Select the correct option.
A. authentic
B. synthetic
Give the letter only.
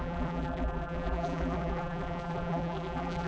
B